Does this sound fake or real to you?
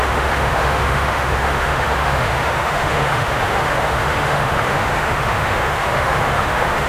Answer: fake